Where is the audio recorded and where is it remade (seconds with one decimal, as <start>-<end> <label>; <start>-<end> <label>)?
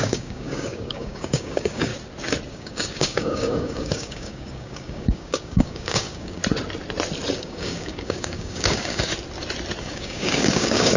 0.0-1.9 remade; 1.9-2.5 recorded; 2.5-6.4 remade; 6.4-7.4 recorded; 7.4-9.1 remade; 9.1-9.8 recorded; 9.8-11.0 remade